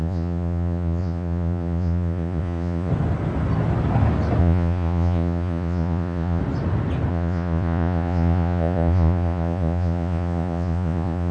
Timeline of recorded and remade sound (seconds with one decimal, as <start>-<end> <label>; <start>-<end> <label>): 0.0-2.9 remade; 2.9-4.4 recorded; 4.4-6.4 remade; 6.4-7.1 recorded; 7.1-11.3 remade

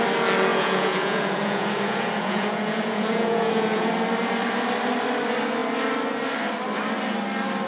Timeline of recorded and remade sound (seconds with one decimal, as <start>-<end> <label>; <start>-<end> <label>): 0.0-0.5 recorded; 0.5-3.9 remade; 3.9-7.7 recorded

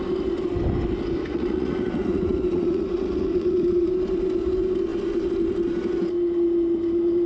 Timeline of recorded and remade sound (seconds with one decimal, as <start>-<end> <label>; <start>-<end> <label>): 0.0-1.2 recorded; 1.2-3.9 remade; 3.9-7.3 recorded

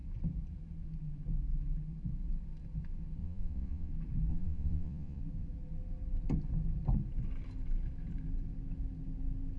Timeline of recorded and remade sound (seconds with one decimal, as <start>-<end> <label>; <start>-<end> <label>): 0.0-3.2 recorded; 3.2-3.9 remade; 3.9-4.3 recorded; 4.3-5.2 remade; 5.2-9.6 recorded